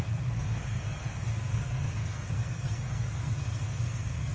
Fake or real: fake